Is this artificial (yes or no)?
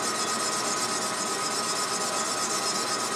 no